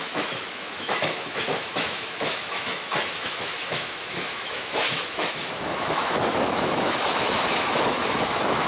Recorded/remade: remade